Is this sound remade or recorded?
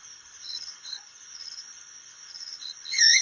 remade